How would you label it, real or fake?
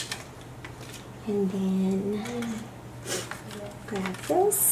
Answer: real